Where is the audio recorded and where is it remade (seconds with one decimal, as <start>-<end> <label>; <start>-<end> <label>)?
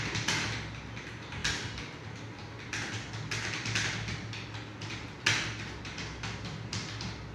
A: 0.0-7.3 recorded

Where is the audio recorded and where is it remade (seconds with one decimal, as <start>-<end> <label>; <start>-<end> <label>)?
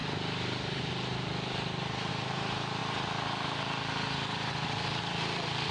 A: 0.0-2.1 recorded; 2.1-2.8 remade; 2.8-5.0 recorded; 5.0-5.7 remade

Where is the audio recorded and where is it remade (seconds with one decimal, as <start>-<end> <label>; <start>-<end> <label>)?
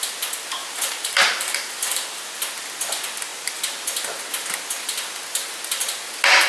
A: 0.0-0.6 recorded; 0.6-2.2 remade; 2.2-6.5 recorded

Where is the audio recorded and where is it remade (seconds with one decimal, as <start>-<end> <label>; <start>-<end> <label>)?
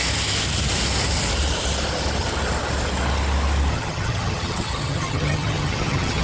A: 0.0-3.7 recorded; 3.7-6.2 remade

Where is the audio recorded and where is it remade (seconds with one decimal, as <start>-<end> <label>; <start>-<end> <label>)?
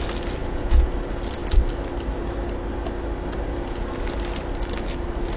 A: 0.0-0.4 recorded; 0.4-0.9 remade; 0.9-5.4 recorded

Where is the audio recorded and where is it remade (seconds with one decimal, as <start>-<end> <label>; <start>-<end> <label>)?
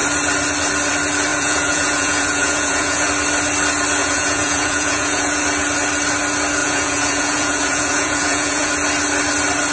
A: 0.0-1.3 recorded; 1.3-3.1 remade; 3.1-4.0 recorded; 4.0-5.4 remade; 5.4-6.6 recorded; 6.6-8.7 remade; 8.7-9.7 recorded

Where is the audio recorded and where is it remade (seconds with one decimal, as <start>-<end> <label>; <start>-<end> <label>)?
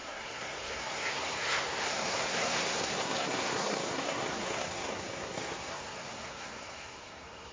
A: 0.0-7.5 remade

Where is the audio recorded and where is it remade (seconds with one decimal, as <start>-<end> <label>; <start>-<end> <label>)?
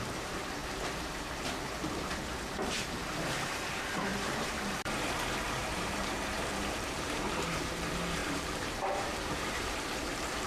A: 0.0-10.5 remade